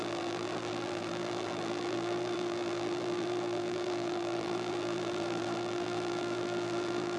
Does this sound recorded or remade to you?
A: remade